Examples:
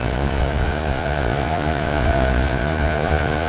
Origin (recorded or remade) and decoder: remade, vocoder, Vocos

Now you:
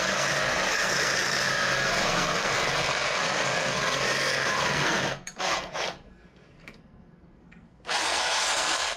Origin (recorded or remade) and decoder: remade, codec, SNAC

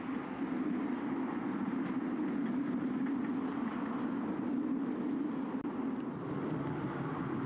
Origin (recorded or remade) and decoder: recorded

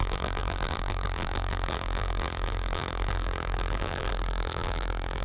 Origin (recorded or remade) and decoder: remade, vocoder, BigVGAN v2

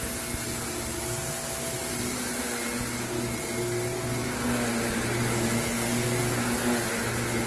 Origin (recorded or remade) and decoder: recorded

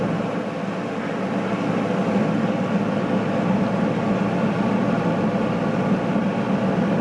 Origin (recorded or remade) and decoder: recorded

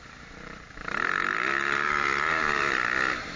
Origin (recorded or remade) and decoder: remade, vocoder, BigVGAN v2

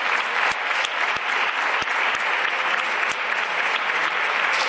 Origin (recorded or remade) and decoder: recorded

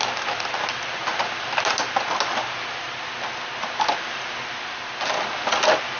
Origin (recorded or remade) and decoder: recorded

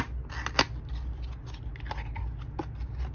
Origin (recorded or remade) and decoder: recorded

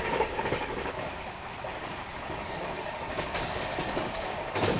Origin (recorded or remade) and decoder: remade, codec, DAC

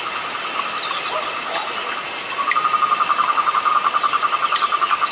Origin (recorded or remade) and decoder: recorded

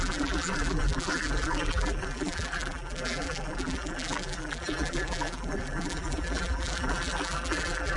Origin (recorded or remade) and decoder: remade, vocoder, BigVGAN v2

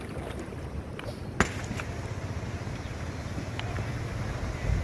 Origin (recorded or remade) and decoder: recorded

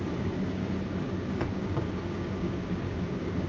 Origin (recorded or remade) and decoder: remade, codec, DAC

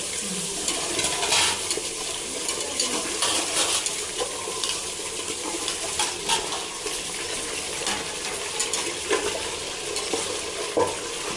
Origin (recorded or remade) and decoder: recorded